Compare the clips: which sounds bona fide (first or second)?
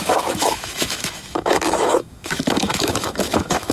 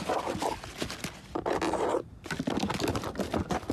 second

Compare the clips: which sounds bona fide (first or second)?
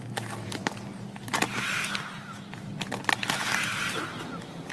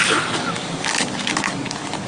first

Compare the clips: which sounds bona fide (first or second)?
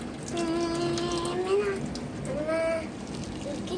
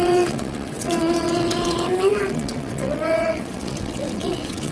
first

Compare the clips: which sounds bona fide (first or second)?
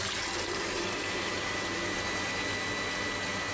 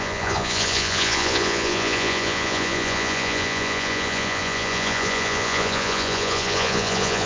first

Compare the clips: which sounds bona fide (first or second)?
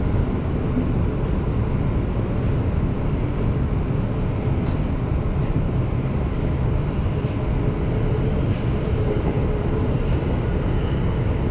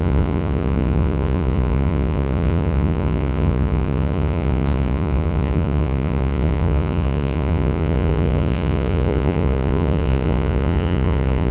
first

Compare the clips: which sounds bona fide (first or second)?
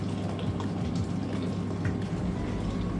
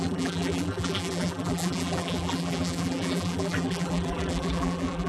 first